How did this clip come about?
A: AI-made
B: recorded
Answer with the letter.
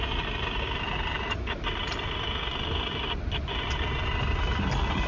B